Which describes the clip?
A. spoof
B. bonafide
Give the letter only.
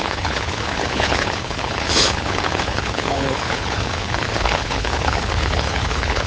A